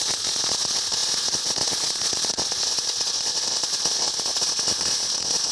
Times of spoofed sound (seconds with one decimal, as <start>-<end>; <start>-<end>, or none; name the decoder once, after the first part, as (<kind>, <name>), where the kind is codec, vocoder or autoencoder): 0.0-5.5 (vocoder, Vocos)